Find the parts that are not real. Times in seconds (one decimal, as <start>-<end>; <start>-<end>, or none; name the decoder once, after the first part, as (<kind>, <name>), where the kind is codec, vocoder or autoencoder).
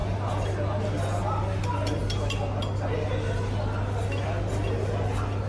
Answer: none